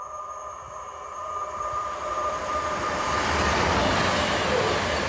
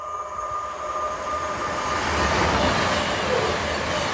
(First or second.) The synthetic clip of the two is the first